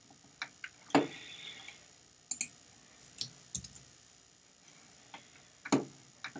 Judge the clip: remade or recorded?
recorded